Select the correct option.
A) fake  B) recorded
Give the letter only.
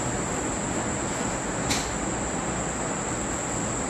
B